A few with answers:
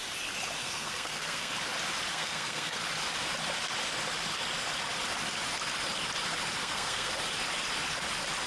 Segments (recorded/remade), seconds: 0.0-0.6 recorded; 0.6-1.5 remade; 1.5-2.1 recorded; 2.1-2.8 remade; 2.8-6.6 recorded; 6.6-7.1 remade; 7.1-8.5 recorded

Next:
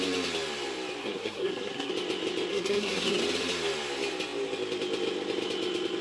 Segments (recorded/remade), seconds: 0.0-1.0 recorded; 1.0-1.9 remade; 1.9-2.5 recorded; 2.5-3.2 remade; 3.2-6.0 recorded

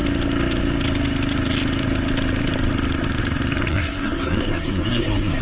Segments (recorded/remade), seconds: 0.0-3.7 recorded; 3.7-5.4 remade

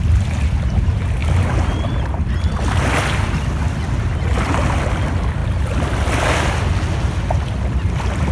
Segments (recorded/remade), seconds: 0.0-8.3 recorded

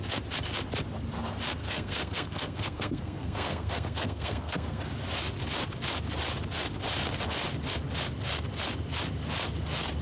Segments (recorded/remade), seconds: 0.0-1.6 recorded; 1.6-4.8 remade; 4.8-10.0 recorded